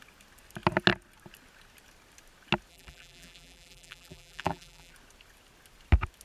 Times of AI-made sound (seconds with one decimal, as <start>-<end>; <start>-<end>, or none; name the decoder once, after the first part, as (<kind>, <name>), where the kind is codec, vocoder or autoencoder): 2.7-4.9 (vocoder, BigVGAN v2)